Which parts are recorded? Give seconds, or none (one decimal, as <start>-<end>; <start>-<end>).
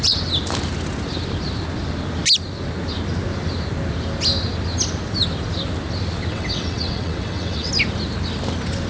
0.0-6.3; 7.7-8.9